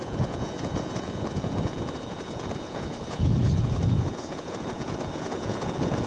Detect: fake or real fake